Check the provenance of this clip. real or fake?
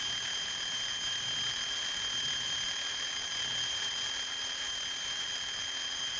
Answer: fake